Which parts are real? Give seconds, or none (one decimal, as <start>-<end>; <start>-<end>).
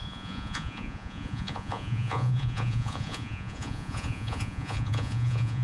none